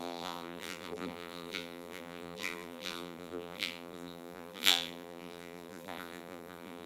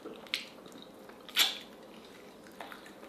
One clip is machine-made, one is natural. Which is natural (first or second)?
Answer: second